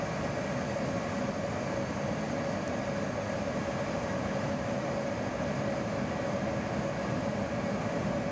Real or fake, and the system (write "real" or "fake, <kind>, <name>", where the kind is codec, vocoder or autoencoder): real